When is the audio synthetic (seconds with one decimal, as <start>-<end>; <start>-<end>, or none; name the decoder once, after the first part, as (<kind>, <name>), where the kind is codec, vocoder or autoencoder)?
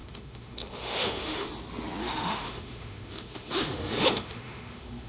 0.0-1.5 (autoencoder, DAC-VAE); 2.0-5.1